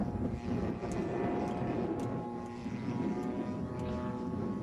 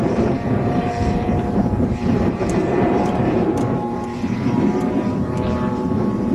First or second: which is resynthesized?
second